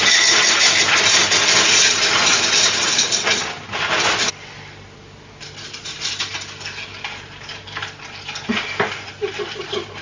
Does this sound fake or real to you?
real